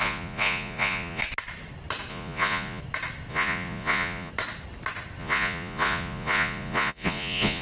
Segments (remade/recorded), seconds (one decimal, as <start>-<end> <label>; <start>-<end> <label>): 0.0-1.2 remade; 1.2-2.1 recorded; 2.1-2.8 remade; 2.8-3.3 recorded; 3.3-4.3 remade; 4.3-5.2 recorded; 5.2-7.6 remade